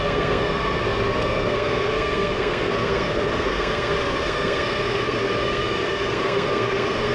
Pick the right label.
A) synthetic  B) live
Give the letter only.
A